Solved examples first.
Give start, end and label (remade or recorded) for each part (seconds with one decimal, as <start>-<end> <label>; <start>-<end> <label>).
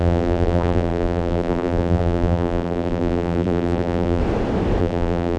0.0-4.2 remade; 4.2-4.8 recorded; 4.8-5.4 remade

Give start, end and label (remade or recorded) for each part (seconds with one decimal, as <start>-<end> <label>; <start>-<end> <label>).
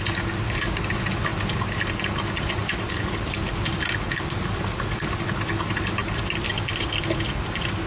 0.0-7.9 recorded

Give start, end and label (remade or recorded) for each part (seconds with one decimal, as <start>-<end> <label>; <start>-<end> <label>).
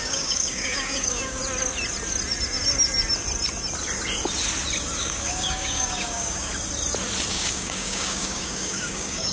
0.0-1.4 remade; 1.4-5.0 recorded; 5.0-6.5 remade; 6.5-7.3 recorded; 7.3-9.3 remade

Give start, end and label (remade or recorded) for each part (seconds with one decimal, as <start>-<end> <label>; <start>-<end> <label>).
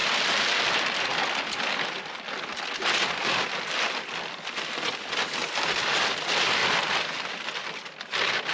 0.0-8.5 recorded